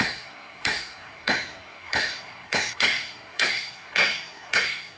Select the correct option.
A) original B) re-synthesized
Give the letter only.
B